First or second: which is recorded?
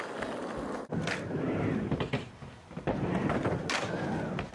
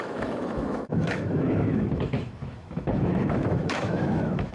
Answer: first